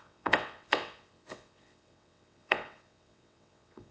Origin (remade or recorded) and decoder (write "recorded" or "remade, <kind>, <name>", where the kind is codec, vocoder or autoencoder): remade, vocoder, WaveNeXt